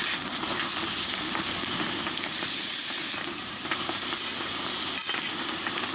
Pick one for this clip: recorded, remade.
recorded